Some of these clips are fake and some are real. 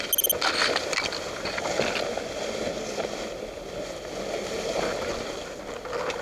real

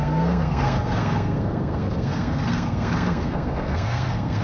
fake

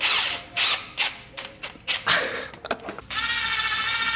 real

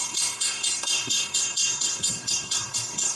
fake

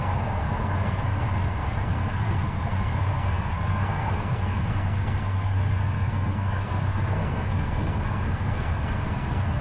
fake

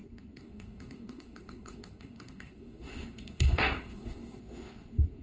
fake